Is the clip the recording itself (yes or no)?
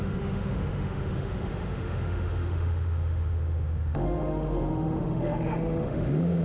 no